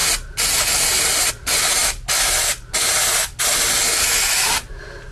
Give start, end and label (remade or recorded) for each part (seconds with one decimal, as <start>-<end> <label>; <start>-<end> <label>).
0.0-5.1 recorded

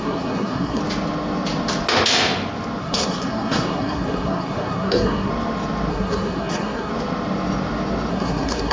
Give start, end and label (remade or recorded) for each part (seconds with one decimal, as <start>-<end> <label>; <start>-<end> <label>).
0.0-0.8 remade; 0.8-2.8 recorded; 2.8-5.3 remade; 5.3-5.9 recorded; 5.9-6.9 remade; 6.9-8.1 recorded; 8.1-8.7 remade

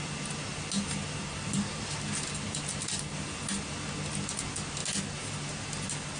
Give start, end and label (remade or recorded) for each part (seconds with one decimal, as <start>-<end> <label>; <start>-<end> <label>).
0.0-6.2 recorded

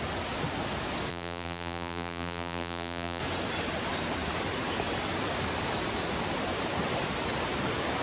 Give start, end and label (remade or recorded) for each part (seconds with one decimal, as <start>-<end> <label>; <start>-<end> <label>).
0.0-1.1 recorded; 1.1-3.2 remade; 3.2-8.0 recorded

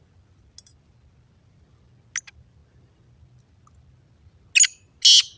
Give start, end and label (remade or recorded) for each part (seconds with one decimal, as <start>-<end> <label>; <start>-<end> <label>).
0.0-5.4 recorded

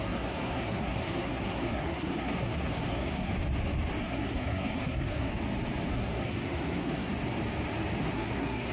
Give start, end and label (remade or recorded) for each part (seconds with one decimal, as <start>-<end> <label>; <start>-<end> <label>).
0.0-3.3 remade; 3.3-4.0 recorded; 4.0-5.3 remade; 5.3-5.9 recorded; 5.9-7.1 remade; 7.1-8.0 recorded; 8.0-8.7 remade

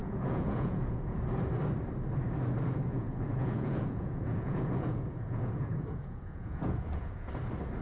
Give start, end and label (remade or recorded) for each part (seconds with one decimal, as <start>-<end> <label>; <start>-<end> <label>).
0.0-1.2 remade; 1.2-2.9 recorded; 2.9-7.3 remade; 7.3-7.8 recorded

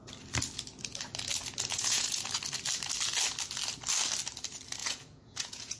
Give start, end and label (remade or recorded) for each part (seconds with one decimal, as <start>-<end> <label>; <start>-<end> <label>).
0.0-1.7 recorded; 1.7-2.2 remade; 2.2-4.8 recorded; 4.8-5.8 remade